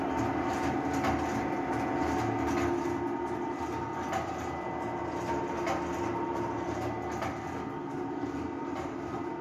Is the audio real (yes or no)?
yes